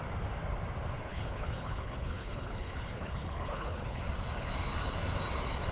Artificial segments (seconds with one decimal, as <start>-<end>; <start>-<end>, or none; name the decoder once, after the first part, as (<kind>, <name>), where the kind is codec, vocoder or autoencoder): 1.1-4.0 (codec, HILCodec)